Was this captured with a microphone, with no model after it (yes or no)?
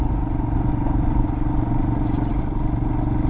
yes